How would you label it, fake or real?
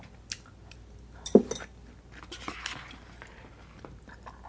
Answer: real